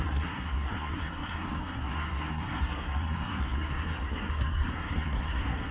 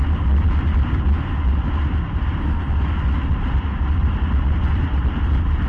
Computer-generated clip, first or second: first